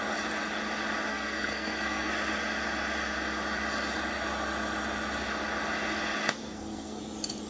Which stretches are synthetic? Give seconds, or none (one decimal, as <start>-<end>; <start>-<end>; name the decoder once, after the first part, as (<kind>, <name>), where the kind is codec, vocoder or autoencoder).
1.1-2.1 (codec, SNAC); 6.4-7.0